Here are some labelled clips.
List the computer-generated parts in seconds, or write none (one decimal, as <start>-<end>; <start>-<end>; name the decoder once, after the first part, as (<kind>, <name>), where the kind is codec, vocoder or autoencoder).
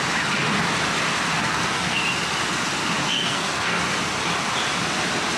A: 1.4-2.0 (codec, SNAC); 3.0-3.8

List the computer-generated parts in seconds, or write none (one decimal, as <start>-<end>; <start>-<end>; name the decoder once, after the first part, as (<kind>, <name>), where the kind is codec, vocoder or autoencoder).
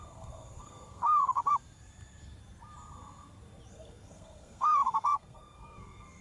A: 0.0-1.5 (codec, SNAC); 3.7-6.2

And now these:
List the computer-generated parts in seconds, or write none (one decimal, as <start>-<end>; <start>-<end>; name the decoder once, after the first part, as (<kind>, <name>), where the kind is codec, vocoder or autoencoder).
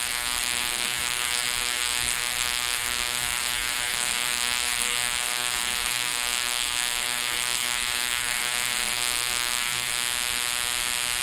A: 0.0-9.9 (codec, SNAC)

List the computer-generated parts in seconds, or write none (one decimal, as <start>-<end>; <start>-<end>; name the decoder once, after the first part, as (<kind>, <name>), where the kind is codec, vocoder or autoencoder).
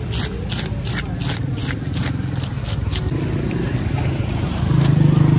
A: none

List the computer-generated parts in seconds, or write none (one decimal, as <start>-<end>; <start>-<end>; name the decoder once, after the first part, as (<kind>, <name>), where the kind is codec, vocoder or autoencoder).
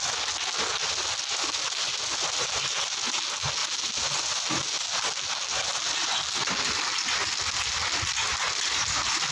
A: none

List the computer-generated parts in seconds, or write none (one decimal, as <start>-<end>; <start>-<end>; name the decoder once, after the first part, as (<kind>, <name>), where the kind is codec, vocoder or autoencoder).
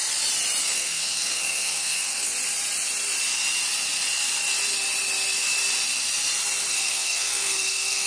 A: 0.6-2.3 (codec, SNAC); 6.7-8.1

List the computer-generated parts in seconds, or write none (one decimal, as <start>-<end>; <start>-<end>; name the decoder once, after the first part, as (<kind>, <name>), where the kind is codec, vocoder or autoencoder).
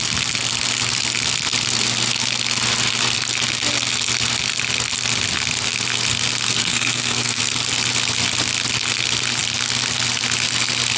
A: 6.6-7.4 (codec, SNAC)